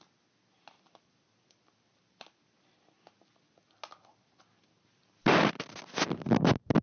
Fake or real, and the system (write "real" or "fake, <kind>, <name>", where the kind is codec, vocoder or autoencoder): real